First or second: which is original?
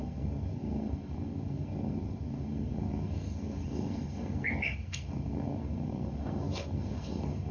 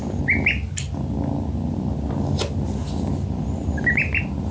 second